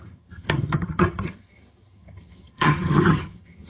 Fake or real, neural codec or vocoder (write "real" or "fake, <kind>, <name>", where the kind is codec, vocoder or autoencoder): fake, vocoder, HiFi-GAN